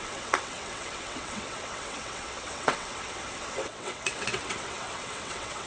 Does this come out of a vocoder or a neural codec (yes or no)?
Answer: yes